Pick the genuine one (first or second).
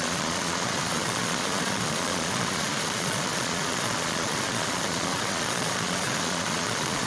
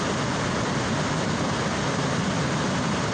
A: second